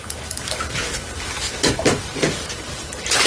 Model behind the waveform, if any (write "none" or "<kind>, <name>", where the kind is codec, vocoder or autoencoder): vocoder, BigVGAN v2